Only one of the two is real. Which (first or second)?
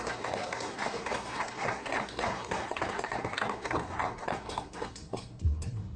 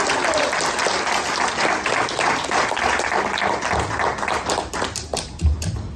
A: second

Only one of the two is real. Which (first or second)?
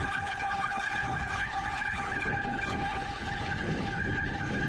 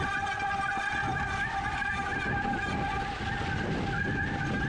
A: second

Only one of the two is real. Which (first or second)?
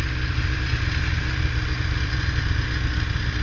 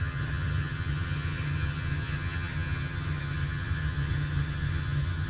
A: first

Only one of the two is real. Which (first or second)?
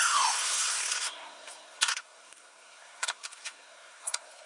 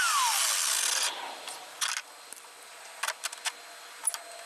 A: second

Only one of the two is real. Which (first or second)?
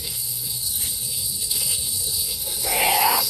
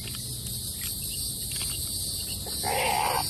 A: second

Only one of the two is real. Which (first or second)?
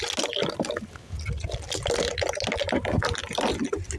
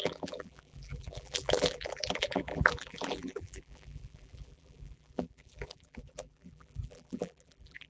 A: first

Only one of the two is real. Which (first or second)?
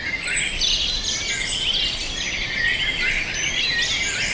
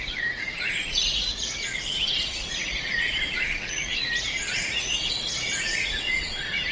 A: first